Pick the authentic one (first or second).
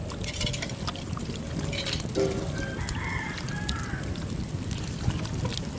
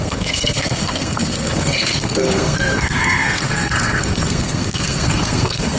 first